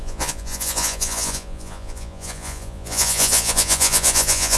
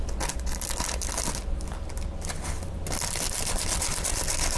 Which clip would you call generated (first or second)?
first